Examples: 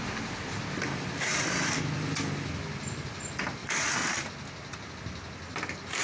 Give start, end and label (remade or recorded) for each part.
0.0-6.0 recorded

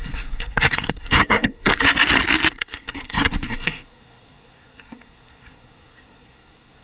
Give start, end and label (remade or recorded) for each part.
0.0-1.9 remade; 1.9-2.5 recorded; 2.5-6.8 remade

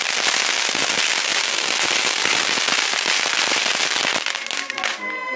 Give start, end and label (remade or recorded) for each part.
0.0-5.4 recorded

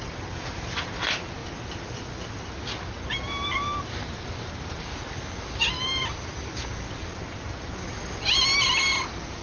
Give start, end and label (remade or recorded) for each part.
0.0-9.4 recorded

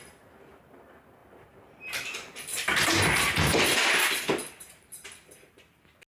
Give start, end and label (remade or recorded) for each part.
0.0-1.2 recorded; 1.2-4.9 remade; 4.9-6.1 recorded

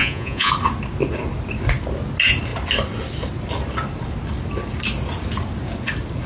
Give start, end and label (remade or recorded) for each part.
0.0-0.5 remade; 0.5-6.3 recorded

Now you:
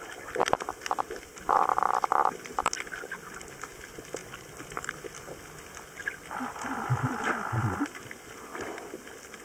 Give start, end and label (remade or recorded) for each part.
0.0-0.4 recorded; 0.4-2.9 remade; 2.9-4.2 recorded; 4.2-4.9 remade; 4.9-6.0 recorded; 6.0-6.8 remade; 6.8-8.5 recorded; 8.5-9.4 remade